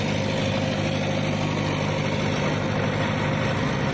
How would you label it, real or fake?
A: real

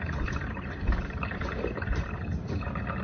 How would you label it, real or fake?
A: fake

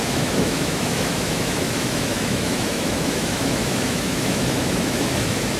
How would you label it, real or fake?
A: fake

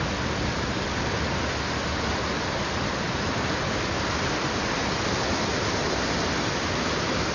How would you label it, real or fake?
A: real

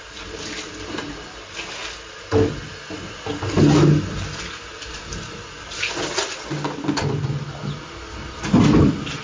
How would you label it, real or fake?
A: real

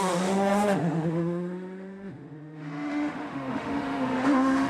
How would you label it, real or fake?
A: fake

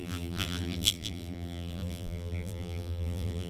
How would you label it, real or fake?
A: fake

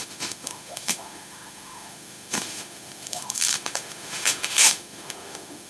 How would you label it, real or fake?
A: fake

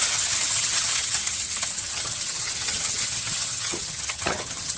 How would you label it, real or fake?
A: fake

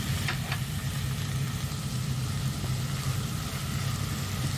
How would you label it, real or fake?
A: real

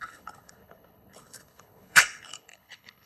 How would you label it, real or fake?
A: fake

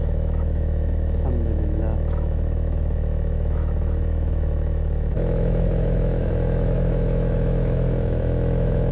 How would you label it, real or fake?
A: fake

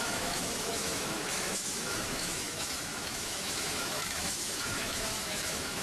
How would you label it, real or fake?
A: fake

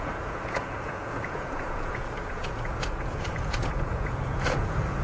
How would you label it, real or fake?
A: fake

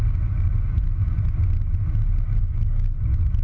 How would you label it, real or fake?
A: real